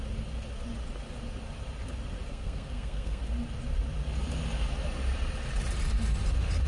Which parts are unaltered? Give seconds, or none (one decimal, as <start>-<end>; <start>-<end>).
0.0-2.3; 3.2-6.7